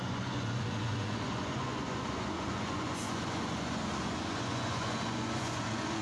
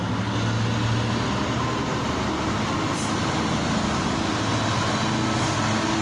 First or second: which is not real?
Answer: first